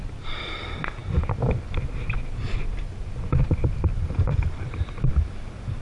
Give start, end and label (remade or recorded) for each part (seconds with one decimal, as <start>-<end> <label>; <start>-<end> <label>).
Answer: 0.0-3.9 recorded; 3.9-5.1 remade; 5.1-5.8 recorded